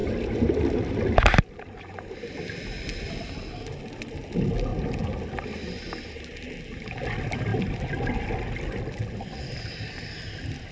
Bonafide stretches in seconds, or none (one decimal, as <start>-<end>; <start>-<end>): 0.0-10.7